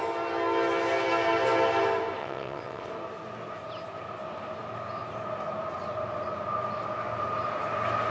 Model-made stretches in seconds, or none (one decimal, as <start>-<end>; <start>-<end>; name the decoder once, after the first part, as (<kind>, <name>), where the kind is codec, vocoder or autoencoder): 2.2-2.9 (vocoder, WaveNeXt)